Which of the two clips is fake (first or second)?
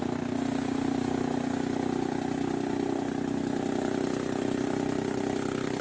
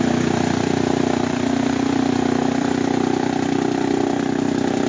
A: second